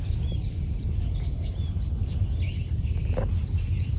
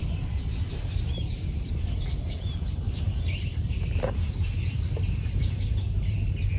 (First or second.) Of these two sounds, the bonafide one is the first